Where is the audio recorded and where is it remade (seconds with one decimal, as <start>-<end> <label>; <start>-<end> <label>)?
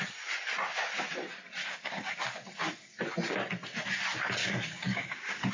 0.0-1.6 recorded; 1.6-2.1 remade; 2.1-4.4 recorded; 4.4-5.5 remade